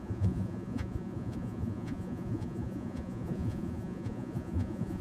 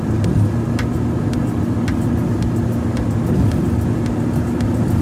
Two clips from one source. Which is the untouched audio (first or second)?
second